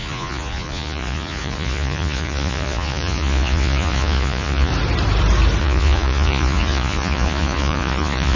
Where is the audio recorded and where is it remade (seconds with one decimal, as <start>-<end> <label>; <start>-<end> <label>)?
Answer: 0.0-4.7 remade; 4.7-5.6 recorded; 5.6-8.4 remade